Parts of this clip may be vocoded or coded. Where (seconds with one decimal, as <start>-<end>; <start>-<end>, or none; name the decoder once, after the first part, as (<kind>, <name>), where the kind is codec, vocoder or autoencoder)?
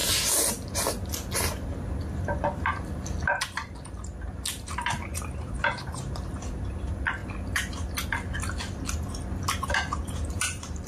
4.5-7.2 (vocoder, BigVGAN v2); 9.7-10.9